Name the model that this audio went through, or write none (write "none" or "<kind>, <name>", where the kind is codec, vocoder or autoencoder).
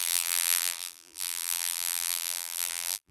vocoder, BigVGAN v2